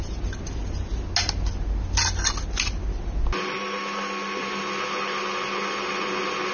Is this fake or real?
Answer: real